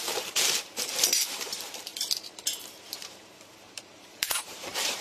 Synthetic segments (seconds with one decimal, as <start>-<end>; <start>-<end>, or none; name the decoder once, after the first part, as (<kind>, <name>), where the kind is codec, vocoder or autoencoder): 0.0-1.9 (vocoder, BigVGAN v2); 2.8-5.0

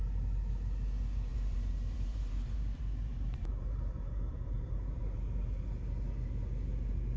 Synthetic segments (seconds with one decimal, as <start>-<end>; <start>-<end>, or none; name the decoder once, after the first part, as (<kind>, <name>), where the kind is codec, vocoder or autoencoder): 1.3-5.6 (vocoder, BigVGAN v2)